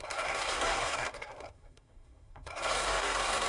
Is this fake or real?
fake